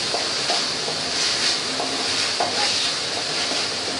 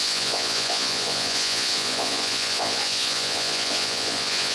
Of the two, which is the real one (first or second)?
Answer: first